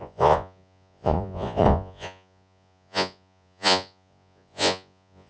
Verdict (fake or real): fake